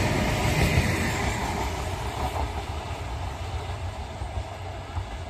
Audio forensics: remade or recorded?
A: recorded